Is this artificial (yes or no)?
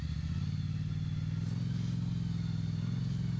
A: no